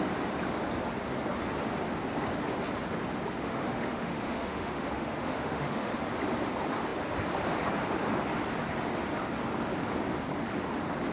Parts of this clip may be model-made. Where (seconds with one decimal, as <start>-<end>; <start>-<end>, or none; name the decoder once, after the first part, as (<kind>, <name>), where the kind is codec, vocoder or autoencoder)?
3.4-5.9 (autoencoder, DAC-VAE)